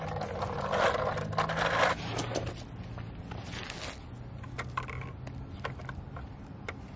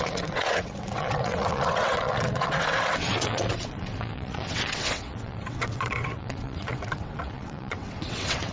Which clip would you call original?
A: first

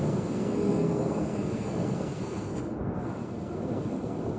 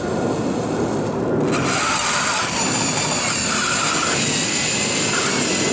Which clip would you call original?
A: second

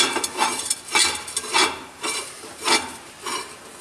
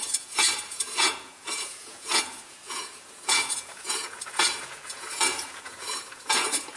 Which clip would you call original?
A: first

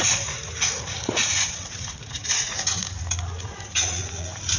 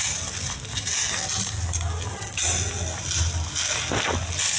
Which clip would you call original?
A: second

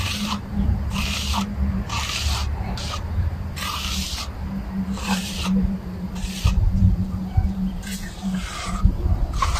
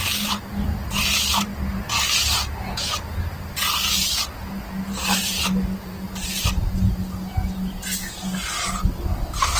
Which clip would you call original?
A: second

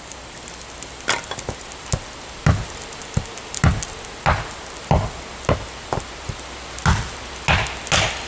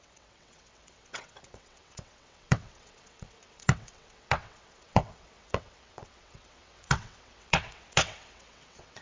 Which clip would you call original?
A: first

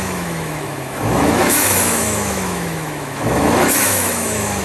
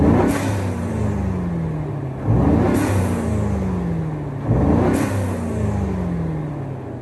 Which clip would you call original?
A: second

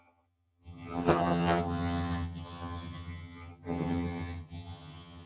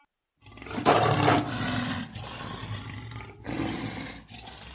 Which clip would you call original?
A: second